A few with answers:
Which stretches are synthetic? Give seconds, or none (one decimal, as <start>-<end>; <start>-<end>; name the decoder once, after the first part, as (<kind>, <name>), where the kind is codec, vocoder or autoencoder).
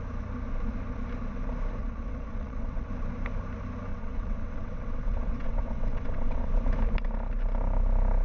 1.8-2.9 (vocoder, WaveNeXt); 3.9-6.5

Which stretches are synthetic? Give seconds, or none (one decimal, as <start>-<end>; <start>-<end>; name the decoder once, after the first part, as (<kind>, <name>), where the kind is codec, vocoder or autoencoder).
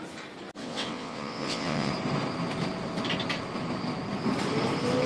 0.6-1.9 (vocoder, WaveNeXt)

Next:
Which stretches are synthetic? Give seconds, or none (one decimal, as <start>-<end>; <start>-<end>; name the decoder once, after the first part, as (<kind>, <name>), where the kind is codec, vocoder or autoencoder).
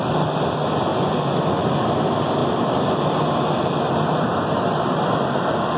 none